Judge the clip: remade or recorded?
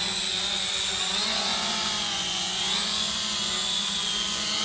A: remade